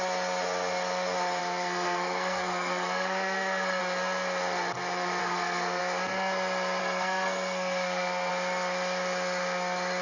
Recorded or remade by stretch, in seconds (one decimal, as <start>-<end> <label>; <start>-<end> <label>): 0.0-1.4 recorded; 1.4-3.8 remade; 3.8-5.2 recorded; 5.2-5.8 remade; 5.8-6.8 recorded; 6.8-8.3 remade; 8.3-10.0 recorded